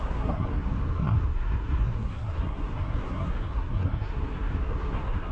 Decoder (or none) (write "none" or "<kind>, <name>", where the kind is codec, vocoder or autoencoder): codec, SNAC